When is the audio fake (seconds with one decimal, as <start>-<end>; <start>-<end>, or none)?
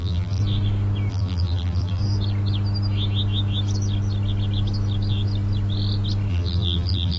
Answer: 0.0-0.4; 1.1-2.0; 6.3-7.2